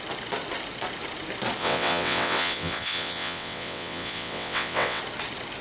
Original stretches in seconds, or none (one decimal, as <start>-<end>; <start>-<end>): 0.0-1.6; 5.0-5.6